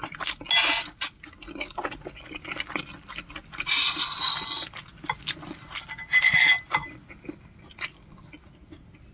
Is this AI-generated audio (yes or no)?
no